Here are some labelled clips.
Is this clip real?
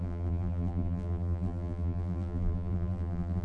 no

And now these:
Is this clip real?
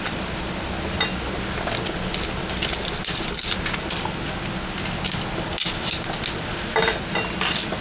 yes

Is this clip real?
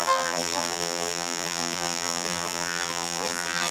no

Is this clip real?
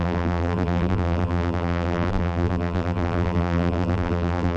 no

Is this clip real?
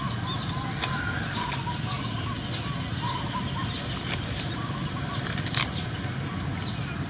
yes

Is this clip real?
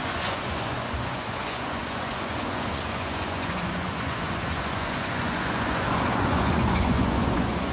no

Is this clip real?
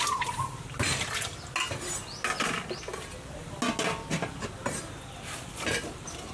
yes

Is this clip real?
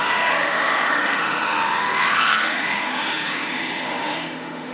no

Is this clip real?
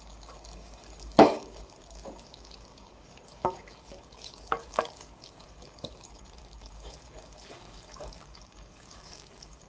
no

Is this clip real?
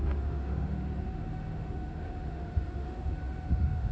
no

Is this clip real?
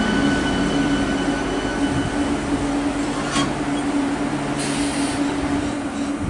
yes